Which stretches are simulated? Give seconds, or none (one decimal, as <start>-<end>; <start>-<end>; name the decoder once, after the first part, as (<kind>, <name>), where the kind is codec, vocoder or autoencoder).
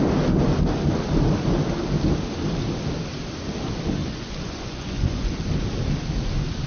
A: 4.0-5.3 (vocoder, Vocos)